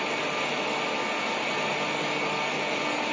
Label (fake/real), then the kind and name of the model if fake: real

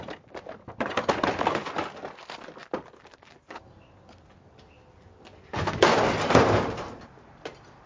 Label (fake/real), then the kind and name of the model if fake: real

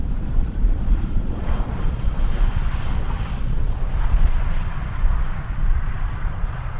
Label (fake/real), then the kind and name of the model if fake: fake, vocoder, Vocos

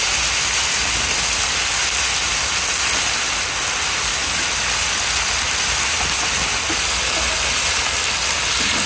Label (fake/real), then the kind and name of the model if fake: real